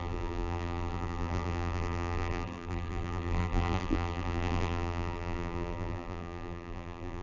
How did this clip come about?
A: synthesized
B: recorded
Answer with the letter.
A